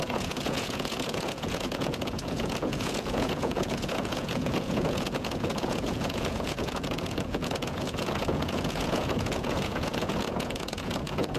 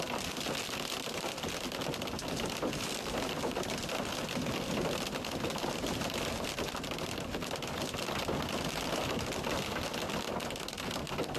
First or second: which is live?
second